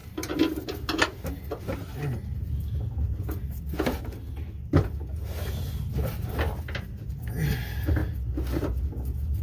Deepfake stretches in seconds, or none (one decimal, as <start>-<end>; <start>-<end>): none